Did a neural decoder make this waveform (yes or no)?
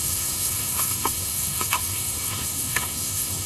yes